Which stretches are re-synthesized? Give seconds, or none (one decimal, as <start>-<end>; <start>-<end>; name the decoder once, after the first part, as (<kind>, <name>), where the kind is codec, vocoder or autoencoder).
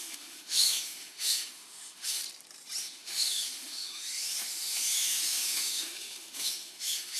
0.0-2.2 (autoencoder, DAC-VAE); 2.8-7.2